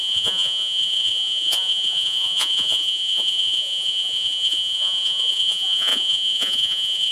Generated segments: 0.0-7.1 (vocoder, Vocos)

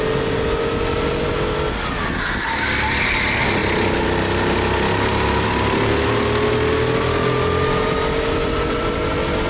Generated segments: none

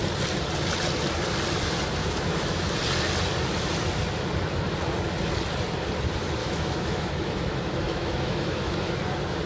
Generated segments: 2.0-2.8 (autoencoder, DAC-VAE); 6.4-8.9

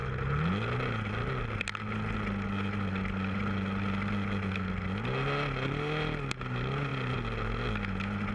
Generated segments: none